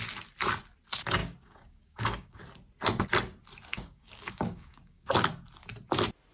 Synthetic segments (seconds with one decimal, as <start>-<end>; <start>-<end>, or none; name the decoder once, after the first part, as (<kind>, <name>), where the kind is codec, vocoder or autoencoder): 1.2-2.4 (codec, DAC); 3.7-5.3

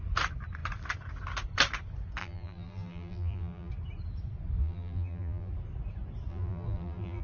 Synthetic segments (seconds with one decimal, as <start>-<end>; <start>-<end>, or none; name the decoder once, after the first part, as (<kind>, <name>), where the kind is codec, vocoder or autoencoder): 2.2-3.7 (vocoder, BigVGAN v2); 4.6-5.5; 6.3-7.2